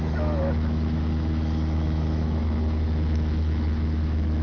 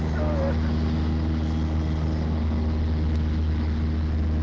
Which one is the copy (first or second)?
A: first